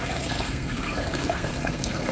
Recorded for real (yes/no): no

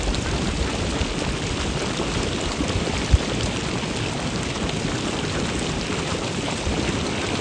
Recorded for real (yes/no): yes